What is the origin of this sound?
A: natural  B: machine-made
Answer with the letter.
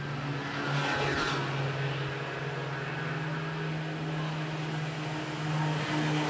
A